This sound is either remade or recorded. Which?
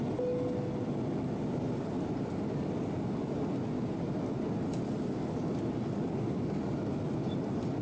recorded